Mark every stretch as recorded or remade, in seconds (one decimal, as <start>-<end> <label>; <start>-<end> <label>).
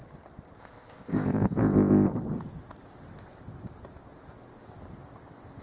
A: 0.0-0.6 recorded; 0.6-2.1 remade; 2.1-5.6 recorded